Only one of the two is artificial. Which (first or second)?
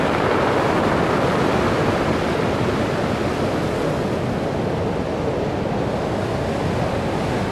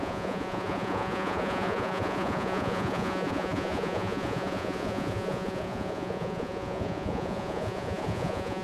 second